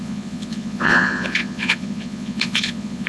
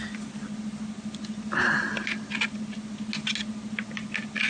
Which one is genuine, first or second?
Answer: second